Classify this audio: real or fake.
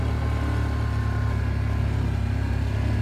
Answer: real